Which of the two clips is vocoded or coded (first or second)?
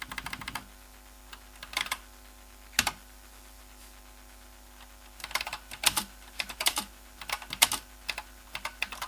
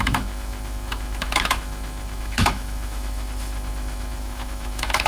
second